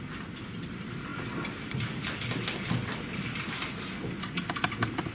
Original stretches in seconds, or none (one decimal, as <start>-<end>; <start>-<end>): 0.0-5.1